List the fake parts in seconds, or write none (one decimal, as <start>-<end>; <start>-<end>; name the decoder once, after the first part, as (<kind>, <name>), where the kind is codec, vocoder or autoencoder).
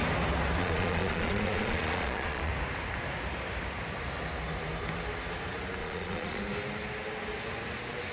0.6-2.5 (vocoder, Vocos); 5.8-6.4